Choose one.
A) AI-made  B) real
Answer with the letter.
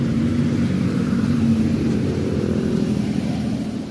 A